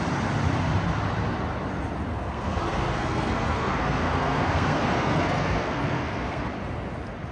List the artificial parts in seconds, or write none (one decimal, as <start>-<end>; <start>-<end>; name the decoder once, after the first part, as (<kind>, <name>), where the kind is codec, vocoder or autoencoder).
2.1-6.5 (codec, SNAC)